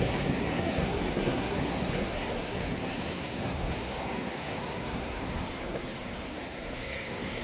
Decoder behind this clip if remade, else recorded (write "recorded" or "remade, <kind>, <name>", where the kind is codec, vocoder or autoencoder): remade, codec, SNAC